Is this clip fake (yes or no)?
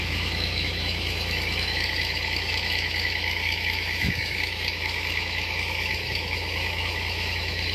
yes